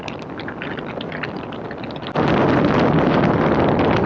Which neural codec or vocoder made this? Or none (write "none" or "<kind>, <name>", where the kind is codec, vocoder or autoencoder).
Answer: none